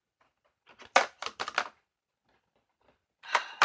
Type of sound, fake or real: fake